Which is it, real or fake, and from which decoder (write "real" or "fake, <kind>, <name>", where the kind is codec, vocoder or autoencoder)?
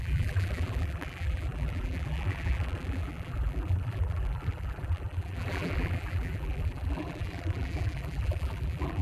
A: fake, vocoder, BigVGAN v2